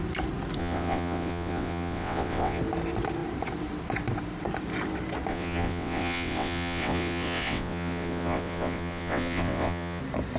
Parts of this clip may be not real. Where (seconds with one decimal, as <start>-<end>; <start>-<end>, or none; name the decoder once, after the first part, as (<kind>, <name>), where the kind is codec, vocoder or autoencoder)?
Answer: 0.6-2.6 (vocoder, WaveNeXt); 5.3-10.0

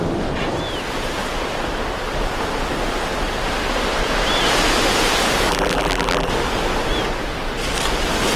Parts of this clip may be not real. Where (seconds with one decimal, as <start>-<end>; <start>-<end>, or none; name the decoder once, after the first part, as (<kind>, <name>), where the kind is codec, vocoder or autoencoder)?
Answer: 5.5-6.3 (vocoder, BigVGAN v2)

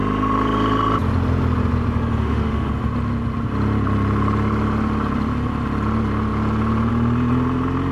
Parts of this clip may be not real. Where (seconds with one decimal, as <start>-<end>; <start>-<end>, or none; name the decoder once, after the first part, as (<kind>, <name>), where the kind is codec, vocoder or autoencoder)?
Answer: 2.2-2.7 (autoencoder, DAC-VAE)

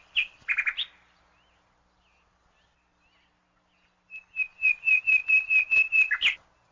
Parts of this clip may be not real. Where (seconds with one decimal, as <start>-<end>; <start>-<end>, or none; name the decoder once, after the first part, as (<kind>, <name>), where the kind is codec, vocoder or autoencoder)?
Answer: none

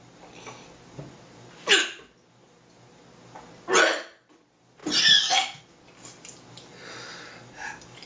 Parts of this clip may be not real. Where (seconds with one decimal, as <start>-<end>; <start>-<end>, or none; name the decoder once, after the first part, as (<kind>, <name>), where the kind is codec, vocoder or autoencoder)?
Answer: none